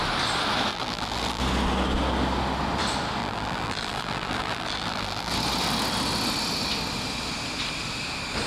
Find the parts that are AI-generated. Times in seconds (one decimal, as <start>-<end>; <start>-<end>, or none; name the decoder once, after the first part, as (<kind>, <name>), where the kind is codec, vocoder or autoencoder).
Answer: 0.7-1.4 (vocoder, BigVGAN v2); 3.2-5.3